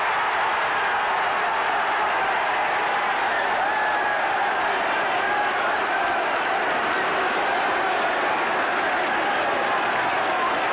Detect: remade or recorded recorded